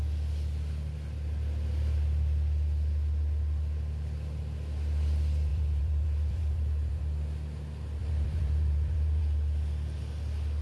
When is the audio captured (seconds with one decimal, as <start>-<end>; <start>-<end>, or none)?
0.0-5.5; 7.0-8.0; 9.2-10.6